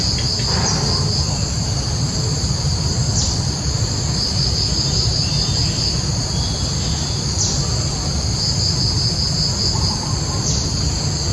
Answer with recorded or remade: recorded